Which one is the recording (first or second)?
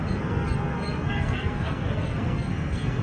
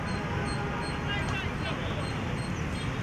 second